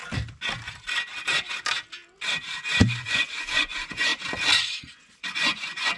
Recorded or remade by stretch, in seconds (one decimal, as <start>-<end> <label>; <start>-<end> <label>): 0.0-2.8 recorded; 2.8-4.1 remade; 4.1-4.6 recorded; 4.6-6.0 remade